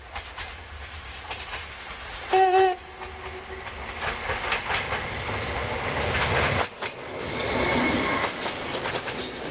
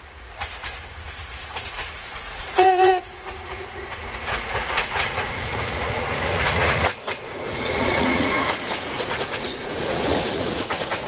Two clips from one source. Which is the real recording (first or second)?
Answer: first